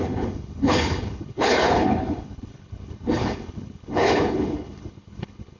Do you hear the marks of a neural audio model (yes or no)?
yes